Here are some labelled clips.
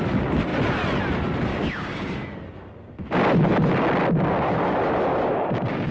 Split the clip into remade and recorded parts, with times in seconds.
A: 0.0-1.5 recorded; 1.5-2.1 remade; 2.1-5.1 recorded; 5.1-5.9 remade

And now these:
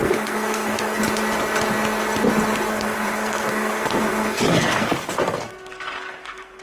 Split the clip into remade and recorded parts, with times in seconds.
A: 0.0-1.0 remade; 1.0-2.7 recorded; 2.7-6.6 remade

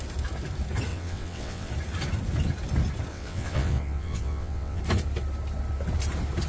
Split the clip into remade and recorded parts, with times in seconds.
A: 0.0-0.9 recorded; 0.9-1.7 remade; 1.7-3.1 recorded; 3.1-4.8 remade; 4.8-6.5 recorded

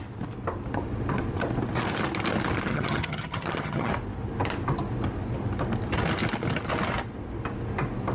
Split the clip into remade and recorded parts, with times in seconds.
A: 0.0-2.7 recorded; 2.7-3.9 remade; 3.9-8.1 recorded

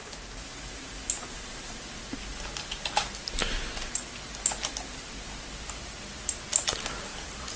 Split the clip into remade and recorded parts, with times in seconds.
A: 0.0-1.8 remade; 1.8-7.6 recorded